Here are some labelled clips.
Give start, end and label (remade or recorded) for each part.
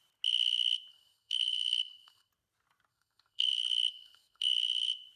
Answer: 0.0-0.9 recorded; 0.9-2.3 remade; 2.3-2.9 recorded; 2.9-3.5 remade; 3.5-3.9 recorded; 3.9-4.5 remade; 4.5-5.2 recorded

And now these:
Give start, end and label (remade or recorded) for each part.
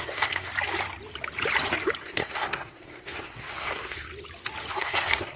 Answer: 0.0-0.5 remade; 0.5-2.0 recorded; 2.0-4.1 remade; 4.1-4.7 recorded; 4.7-5.4 remade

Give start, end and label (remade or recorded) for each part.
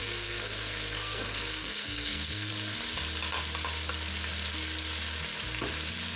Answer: 0.0-2.5 remade; 2.5-6.2 recorded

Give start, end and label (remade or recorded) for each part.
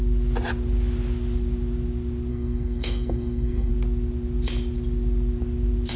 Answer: 0.0-2.3 recorded; 2.3-3.7 remade; 3.7-6.0 recorded